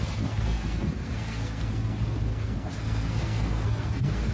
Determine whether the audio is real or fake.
fake